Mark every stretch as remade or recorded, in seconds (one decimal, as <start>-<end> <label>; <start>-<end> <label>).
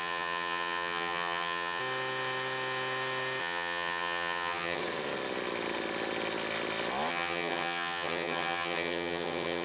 0.0-1.8 remade; 1.8-3.4 recorded; 3.4-4.8 remade; 4.8-7.1 recorded; 7.1-9.6 remade